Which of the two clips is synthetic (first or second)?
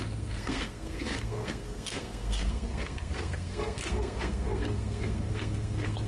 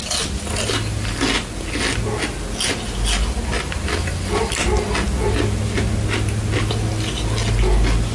first